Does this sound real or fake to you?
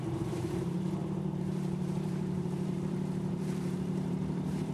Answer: fake